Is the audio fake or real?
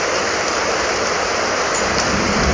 fake